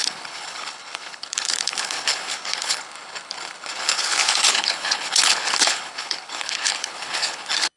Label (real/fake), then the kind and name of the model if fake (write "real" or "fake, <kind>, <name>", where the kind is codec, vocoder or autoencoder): fake, codec, HILCodec